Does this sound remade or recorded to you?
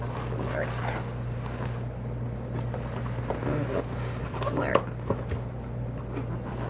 recorded